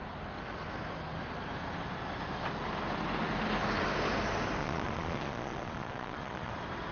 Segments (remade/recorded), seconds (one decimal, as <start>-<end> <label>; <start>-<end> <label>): 0.0-4.6 recorded; 4.6-6.5 remade; 6.5-6.9 recorded